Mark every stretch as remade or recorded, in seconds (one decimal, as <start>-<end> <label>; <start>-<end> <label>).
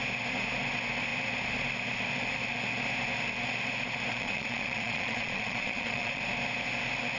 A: 0.0-4.1 recorded; 4.1-6.2 remade; 6.2-7.2 recorded